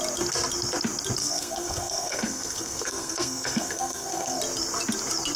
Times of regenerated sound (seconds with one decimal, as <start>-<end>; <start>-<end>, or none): 1.2-4.4

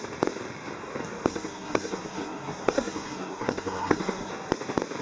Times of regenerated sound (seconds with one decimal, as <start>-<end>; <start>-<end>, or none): 1.3-4.3

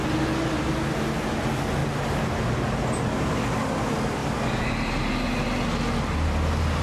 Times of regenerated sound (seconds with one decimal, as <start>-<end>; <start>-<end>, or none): none

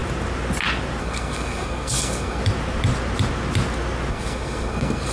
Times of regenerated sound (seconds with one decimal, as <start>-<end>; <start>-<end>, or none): 1.0-2.4; 4.1-5.1

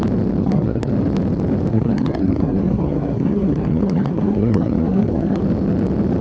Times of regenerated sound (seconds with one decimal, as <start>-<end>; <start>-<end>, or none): 0.4-0.9; 1.7-5.4